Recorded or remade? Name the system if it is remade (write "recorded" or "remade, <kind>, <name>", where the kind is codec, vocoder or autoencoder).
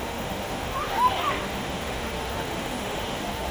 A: remade, autoencoder, DAC-VAE